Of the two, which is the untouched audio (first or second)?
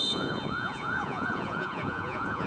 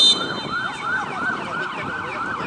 second